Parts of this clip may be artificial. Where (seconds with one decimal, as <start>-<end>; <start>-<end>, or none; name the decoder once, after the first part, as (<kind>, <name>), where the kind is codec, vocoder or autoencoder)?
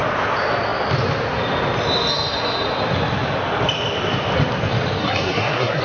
5.0-5.8 (codec, SNAC)